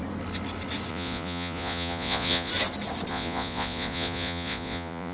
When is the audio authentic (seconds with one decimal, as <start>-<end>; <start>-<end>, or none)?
0.0-0.9; 2.5-3.1